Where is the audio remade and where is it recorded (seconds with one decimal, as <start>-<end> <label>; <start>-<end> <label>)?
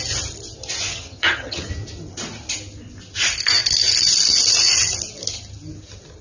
0.0-0.9 recorded; 0.9-1.7 remade; 1.7-6.2 recorded